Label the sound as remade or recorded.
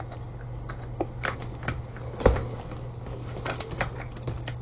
recorded